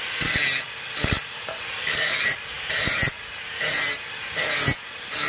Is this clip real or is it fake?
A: real